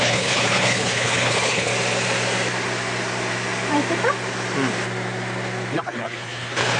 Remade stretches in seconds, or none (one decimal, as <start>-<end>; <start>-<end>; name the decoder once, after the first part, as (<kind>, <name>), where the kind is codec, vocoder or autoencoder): 0.0-1.7 (codec, HILCodec); 5.8-6.8